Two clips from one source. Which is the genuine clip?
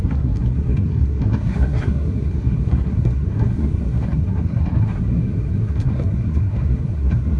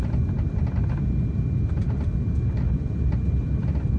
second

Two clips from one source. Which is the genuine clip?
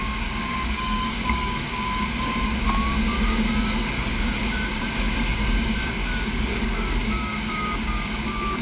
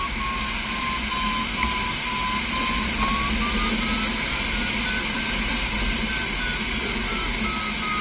second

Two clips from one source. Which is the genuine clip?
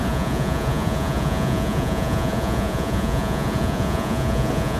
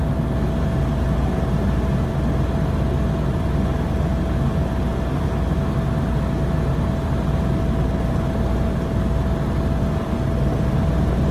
second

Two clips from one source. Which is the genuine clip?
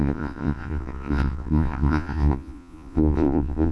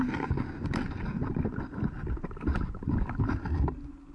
second